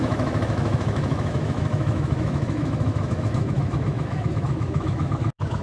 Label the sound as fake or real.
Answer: fake